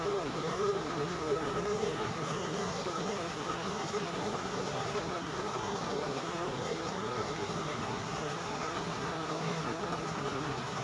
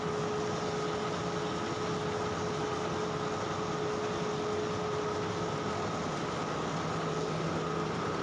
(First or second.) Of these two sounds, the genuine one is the second